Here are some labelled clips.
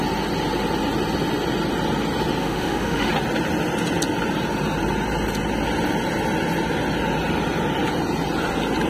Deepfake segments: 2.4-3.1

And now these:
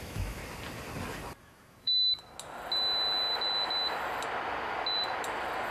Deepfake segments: 0.0-0.4; 1.4-2.1

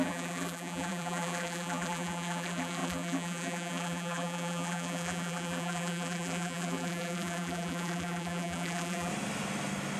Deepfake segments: 0.0-9.1